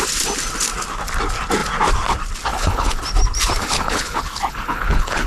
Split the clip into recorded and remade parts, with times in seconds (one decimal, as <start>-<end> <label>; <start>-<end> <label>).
0.0-2.5 recorded; 2.5-3.0 remade; 3.0-3.6 recorded; 3.6-5.3 remade